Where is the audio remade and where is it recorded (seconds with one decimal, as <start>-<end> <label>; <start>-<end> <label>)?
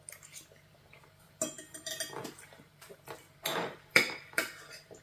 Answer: 0.0-2.2 recorded; 2.2-2.9 remade; 2.9-3.5 recorded; 3.5-5.0 remade